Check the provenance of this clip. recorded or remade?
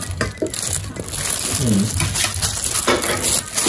recorded